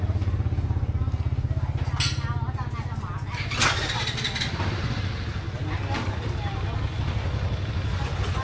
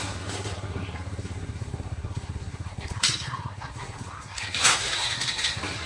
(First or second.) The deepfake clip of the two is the second